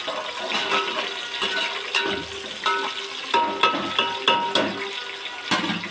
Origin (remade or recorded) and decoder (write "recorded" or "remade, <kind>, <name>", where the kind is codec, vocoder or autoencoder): recorded